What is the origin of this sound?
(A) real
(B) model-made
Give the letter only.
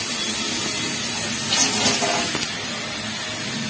A